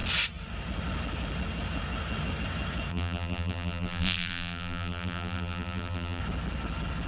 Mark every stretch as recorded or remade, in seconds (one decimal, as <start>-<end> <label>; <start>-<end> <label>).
0.0-2.9 recorded; 2.9-6.2 remade; 6.2-7.1 recorded